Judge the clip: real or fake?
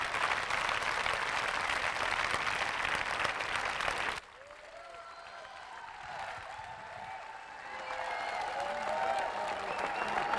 real